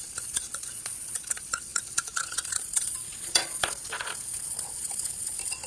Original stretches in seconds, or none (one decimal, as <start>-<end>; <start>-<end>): none